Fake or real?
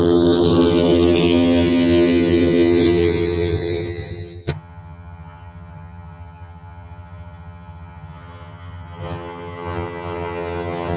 fake